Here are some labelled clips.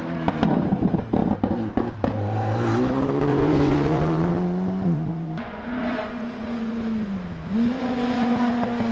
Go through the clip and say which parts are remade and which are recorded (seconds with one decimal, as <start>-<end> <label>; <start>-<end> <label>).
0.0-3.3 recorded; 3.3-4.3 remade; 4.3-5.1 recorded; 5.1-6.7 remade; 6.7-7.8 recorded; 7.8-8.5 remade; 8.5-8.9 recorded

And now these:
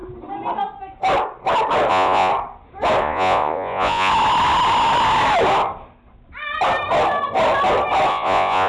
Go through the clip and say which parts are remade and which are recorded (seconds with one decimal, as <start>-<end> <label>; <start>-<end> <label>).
0.0-1.9 recorded; 1.9-2.3 remade; 2.3-3.0 recorded; 3.0-4.1 remade; 4.1-8.1 recorded; 8.1-8.7 remade

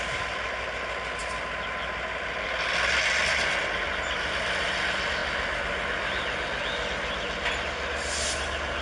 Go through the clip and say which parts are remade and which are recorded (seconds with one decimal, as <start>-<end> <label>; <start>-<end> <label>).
0.0-8.8 recorded

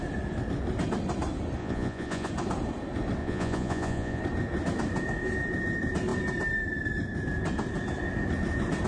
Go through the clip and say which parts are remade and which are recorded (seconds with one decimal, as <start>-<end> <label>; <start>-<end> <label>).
0.0-1.6 recorded; 1.6-2.3 remade; 2.3-3.2 recorded; 3.2-4.2 remade; 4.2-8.9 recorded

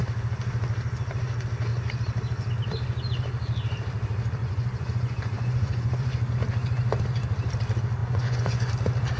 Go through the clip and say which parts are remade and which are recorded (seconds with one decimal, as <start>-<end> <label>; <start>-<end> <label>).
0.0-4.4 recorded; 4.4-6.3 remade; 6.3-8.0 recorded; 8.0-8.7 remade; 8.7-9.2 recorded